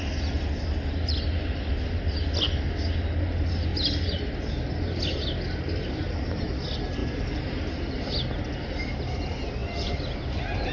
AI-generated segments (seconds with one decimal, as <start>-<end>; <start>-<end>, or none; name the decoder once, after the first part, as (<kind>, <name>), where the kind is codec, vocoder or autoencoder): none